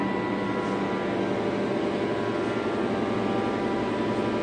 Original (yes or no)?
yes